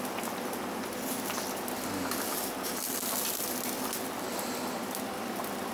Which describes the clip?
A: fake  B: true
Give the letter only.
B